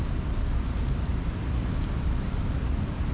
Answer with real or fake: fake